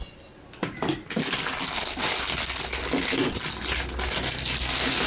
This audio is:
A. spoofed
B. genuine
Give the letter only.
B